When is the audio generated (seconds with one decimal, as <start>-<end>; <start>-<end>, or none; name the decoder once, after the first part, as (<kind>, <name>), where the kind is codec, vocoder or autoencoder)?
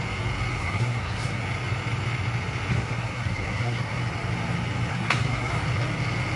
0.6-1.4 (codec, SNAC); 2.7-4.0; 4.9-5.5